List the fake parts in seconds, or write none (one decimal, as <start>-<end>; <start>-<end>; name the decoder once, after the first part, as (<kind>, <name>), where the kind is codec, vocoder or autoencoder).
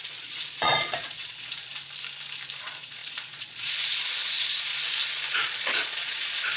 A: 0.0-1.7 (vocoder, Vocos); 2.6-4.7; 5.3-6.6